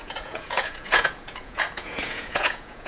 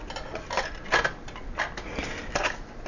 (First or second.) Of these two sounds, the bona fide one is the second